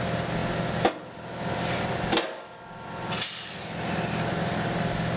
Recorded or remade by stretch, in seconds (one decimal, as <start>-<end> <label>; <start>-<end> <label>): 0.0-5.2 recorded